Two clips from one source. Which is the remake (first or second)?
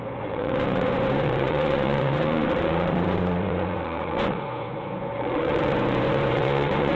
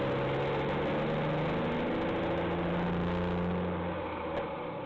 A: first